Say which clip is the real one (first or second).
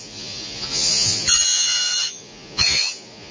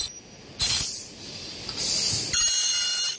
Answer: second